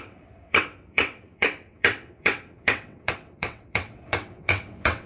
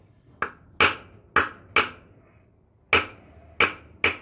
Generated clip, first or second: first